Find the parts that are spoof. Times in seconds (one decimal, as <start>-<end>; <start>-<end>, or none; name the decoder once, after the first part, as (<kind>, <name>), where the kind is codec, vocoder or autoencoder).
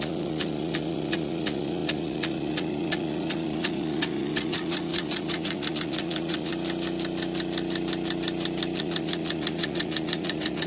0.0-6.5 (vocoder, Vocos); 8.8-10.7